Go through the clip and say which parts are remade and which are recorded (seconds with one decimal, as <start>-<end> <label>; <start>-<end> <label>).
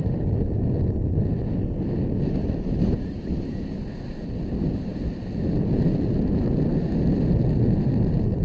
0.0-8.4 recorded